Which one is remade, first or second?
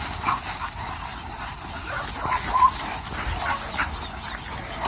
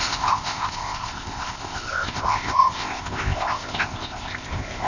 second